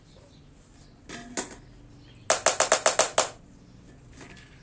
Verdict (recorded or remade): recorded